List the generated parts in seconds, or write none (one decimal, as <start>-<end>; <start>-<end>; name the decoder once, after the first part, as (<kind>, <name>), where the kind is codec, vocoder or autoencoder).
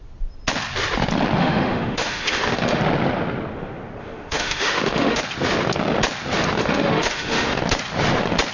1.4-2.8 (autoencoder, DAC-VAE); 4.0-5.2; 6.6-7.6